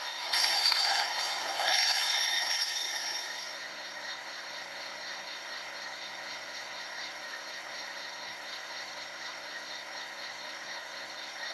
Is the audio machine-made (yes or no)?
yes